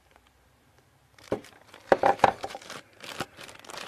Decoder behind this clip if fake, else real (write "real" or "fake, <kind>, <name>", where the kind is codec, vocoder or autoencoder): fake, vocoder, BigVGAN v2